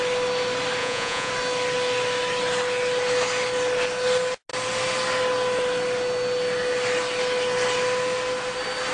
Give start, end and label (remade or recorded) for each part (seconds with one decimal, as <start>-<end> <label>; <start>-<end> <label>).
0.0-0.8 recorded; 0.8-1.3 remade; 1.3-8.9 recorded